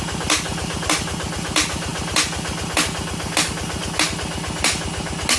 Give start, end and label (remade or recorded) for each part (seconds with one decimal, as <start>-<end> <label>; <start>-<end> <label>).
0.0-5.4 recorded